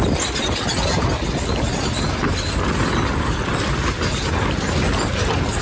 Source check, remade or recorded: recorded